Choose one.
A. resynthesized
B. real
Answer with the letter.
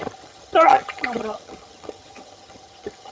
A